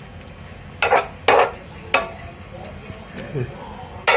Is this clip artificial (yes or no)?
no